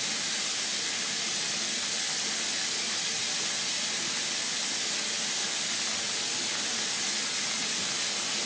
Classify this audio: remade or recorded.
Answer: recorded